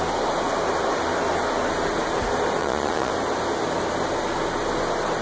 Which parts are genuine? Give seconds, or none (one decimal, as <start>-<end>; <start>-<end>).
0.0-2.6; 3.1-5.2